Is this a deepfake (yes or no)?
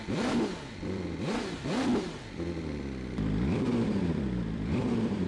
yes